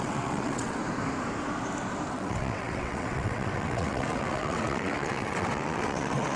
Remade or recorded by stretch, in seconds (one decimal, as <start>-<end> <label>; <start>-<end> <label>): 0.0-0.8 remade; 0.8-2.1 recorded; 2.1-6.4 remade